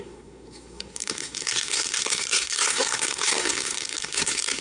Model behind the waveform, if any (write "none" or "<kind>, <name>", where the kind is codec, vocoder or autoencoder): codec, SNAC